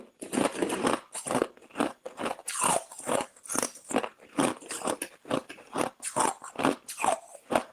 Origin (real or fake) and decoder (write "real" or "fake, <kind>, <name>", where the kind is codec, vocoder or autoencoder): real